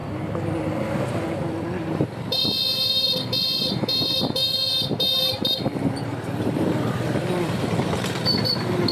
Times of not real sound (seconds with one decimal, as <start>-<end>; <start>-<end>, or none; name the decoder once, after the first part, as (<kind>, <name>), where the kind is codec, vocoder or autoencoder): 1.8-2.4 (vocoder, BigVGAN v2); 3.6-4.4; 6.0-8.9

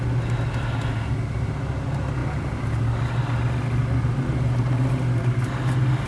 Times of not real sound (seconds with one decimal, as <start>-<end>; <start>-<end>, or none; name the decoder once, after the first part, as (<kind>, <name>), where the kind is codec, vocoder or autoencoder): none

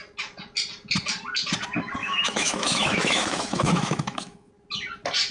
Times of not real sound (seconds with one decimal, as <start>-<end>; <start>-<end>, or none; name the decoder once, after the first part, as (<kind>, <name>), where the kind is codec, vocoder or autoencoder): 2.0-4.5 (autoencoder, DAC-VAE)

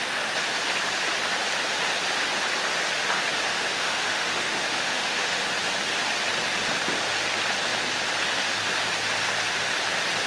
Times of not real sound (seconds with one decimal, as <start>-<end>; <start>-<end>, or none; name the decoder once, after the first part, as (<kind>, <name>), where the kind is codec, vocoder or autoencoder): 3.5-5.4 (autoencoder, DAC-VAE)

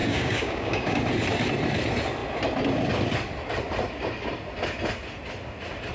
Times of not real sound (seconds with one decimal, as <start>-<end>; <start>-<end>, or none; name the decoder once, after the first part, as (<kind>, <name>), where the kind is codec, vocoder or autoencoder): 0.0-1.0 (codec, DAC)

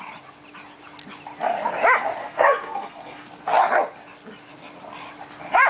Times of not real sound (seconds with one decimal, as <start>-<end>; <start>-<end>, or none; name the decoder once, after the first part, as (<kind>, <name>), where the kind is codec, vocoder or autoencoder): 2.2-3.2 (codec, SNAC)